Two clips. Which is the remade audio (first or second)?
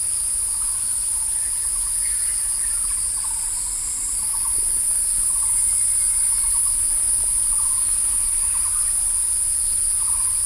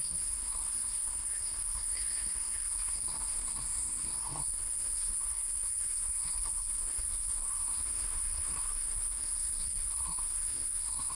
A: second